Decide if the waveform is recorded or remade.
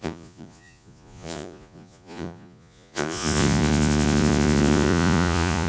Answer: remade